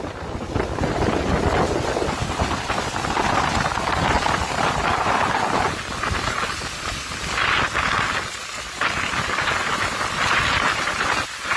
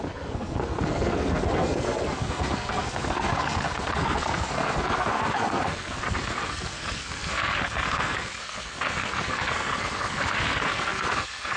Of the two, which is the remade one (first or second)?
second